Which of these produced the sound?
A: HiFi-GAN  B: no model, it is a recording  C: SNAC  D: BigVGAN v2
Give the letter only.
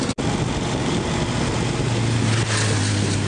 B